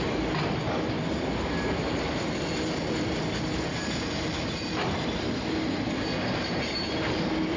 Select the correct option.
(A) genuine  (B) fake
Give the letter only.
A